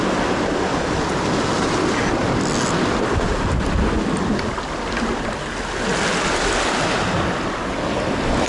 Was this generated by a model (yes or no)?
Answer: no